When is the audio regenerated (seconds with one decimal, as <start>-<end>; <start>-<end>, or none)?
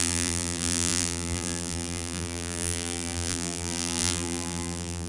0.0-5.1